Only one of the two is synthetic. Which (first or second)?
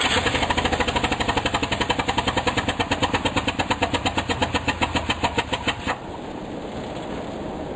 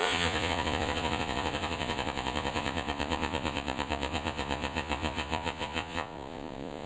second